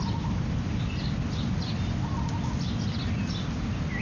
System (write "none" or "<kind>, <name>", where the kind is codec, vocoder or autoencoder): none